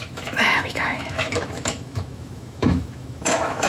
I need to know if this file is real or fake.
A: fake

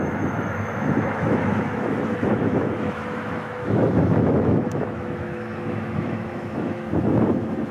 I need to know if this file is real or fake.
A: fake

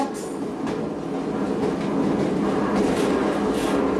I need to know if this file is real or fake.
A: real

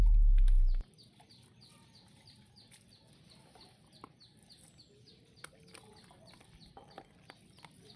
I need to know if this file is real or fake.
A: real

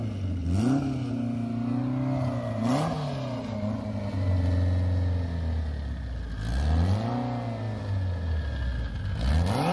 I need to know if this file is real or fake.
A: real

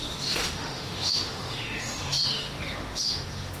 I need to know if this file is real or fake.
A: fake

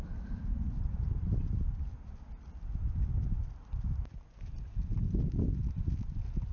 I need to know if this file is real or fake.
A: real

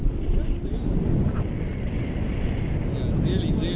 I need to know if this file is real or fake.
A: real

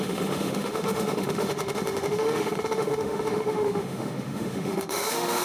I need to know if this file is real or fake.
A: fake